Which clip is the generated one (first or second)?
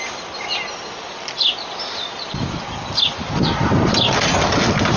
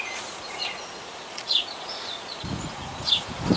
second